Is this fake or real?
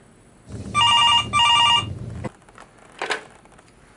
real